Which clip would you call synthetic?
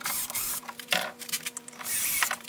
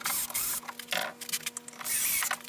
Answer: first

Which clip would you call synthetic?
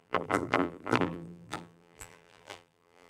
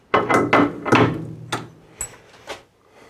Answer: first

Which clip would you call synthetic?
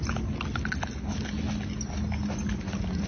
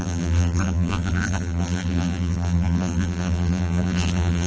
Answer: second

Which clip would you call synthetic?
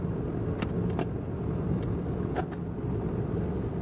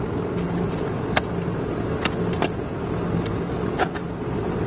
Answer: first